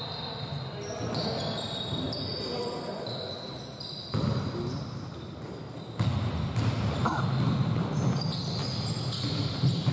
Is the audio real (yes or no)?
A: yes